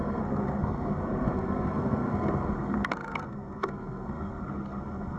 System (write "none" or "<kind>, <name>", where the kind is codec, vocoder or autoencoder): codec, SNAC